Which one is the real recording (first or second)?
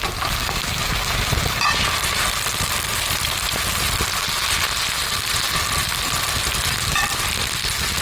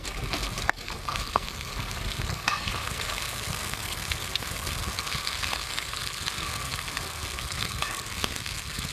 first